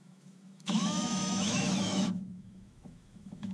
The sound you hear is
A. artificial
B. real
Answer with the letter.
A